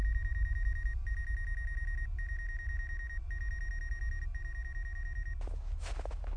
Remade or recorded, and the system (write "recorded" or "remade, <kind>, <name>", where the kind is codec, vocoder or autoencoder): recorded